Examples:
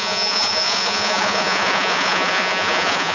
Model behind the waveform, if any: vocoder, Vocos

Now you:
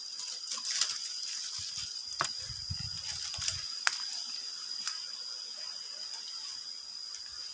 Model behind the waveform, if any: none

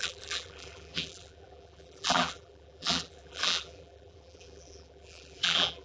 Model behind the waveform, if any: vocoder, BigVGAN v2